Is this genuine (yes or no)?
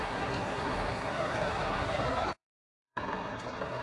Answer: no